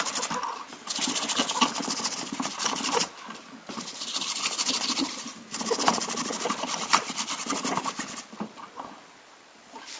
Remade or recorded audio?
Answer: recorded